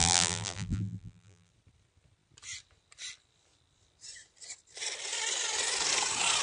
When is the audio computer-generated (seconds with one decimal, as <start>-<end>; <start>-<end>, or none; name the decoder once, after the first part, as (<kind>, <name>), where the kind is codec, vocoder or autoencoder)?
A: 0.0-1.5 (vocoder, BigVGAN v2)